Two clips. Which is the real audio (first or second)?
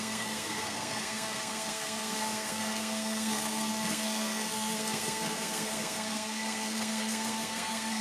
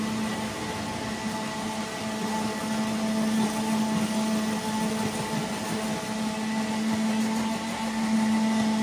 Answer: second